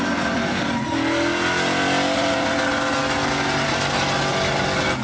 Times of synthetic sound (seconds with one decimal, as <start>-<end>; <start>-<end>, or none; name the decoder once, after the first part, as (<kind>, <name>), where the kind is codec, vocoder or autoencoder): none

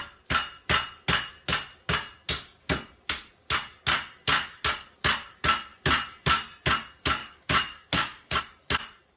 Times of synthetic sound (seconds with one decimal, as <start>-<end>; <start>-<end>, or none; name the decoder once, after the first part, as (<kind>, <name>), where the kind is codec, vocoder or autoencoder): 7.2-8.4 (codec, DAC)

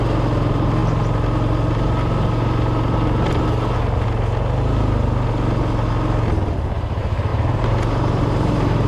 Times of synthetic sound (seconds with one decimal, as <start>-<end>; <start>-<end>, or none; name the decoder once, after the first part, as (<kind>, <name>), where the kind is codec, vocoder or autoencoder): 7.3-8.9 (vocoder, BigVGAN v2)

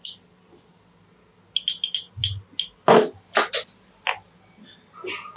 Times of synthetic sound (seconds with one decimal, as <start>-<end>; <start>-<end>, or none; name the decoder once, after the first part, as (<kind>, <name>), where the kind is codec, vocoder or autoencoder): none

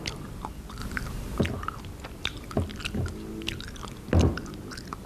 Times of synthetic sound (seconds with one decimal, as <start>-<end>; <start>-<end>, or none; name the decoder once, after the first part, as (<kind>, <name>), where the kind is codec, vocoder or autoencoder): 0.8-1.4 (vocoder, BigVGAN v2)

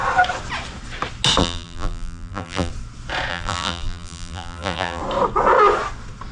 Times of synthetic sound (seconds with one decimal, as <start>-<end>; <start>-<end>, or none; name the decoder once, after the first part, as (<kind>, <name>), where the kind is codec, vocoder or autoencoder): 1.4-2.7 (vocoder, BigVGAN v2); 3.3-5.0

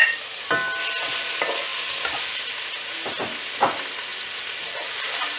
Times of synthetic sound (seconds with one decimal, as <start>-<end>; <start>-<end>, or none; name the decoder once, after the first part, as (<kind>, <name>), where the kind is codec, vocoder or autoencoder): none

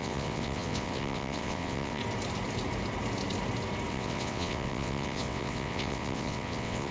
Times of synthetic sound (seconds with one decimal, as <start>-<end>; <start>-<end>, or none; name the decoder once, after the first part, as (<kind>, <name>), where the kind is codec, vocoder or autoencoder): 0.0-2.0 (vocoder, WaveNeXt); 3.9-6.9